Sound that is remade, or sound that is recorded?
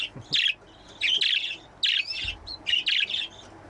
recorded